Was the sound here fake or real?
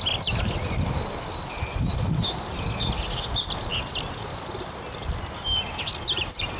fake